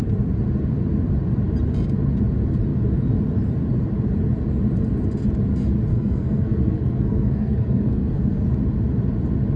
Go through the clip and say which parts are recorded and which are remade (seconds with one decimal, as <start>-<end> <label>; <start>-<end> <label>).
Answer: 0.0-5.9 recorded; 5.9-8.4 remade; 8.4-9.6 recorded